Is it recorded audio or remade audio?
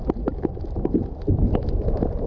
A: recorded